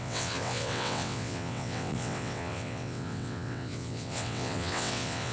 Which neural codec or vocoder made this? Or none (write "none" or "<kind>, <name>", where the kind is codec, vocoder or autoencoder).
vocoder, WaveNeXt